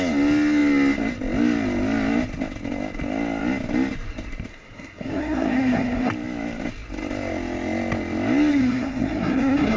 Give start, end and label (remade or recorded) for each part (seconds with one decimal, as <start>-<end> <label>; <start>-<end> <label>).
0.0-4.5 recorded; 4.5-6.1 remade; 6.1-8.5 recorded; 8.5-9.8 remade